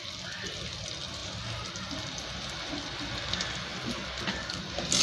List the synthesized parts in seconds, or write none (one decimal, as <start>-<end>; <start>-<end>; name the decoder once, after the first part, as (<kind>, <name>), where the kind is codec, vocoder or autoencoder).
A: none